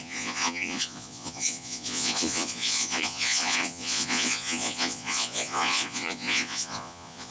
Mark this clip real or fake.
fake